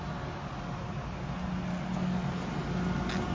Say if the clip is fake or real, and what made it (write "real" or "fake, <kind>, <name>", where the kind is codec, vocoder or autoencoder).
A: real